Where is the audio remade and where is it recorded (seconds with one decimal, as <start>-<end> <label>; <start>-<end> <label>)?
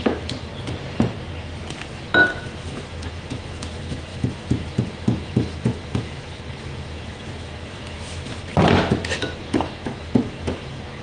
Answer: 0.0-0.5 remade; 0.5-1.9 recorded; 1.9-8.5 remade; 8.5-9.0 recorded; 9.0-11.0 remade